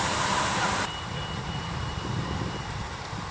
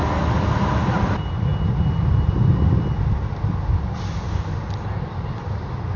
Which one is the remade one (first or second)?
first